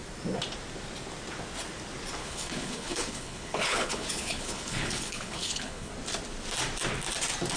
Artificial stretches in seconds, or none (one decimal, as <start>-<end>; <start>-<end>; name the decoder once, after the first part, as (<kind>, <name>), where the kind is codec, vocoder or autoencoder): 2.2-5.9 (codec, HILCodec)